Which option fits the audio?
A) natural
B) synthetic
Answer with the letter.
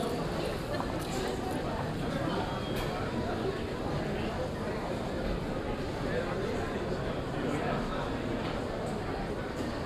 A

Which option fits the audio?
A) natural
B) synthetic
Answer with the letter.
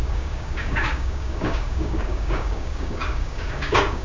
B